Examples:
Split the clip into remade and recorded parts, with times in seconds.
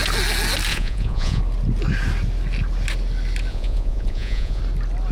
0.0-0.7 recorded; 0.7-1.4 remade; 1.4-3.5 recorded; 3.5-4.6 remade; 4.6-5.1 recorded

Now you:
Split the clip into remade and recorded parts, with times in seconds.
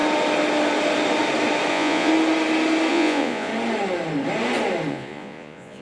0.0-1.7 recorded; 1.7-2.1 remade; 2.1-2.9 recorded; 2.9-3.5 remade; 3.5-4.9 recorded; 4.9-5.8 remade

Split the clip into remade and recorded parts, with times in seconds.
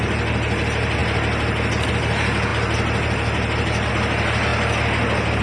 0.0-5.4 recorded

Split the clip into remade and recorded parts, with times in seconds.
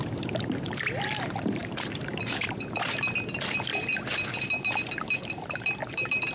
0.0-6.3 remade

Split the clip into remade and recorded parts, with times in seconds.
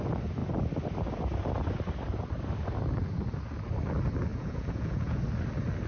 0.0-4.3 recorded; 4.3-5.2 remade; 5.2-5.9 recorded